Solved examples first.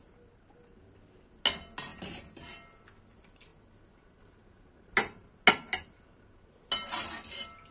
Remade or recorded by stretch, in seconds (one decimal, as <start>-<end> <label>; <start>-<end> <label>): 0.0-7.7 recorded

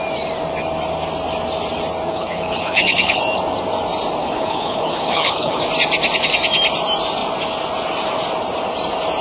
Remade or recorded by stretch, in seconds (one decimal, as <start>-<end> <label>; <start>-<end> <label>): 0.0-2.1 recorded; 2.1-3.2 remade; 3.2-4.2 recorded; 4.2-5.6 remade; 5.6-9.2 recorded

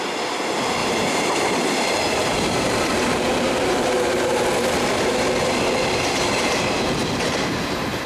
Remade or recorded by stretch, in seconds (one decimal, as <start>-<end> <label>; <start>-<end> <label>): 0.0-0.8 recorded; 0.8-4.4 remade; 4.4-7.0 recorded; 7.0-8.1 remade